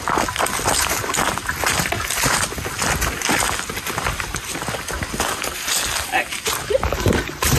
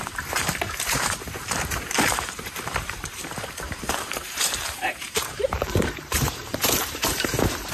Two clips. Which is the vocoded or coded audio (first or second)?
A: second